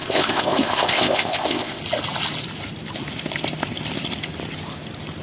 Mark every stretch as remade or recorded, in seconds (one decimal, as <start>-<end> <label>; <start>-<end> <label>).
0.0-1.8 remade; 1.8-5.2 recorded